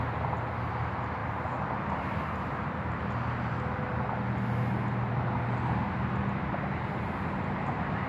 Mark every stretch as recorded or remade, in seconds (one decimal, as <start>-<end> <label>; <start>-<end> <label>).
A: 0.0-1.2 recorded; 1.2-3.0 remade; 3.0-8.1 recorded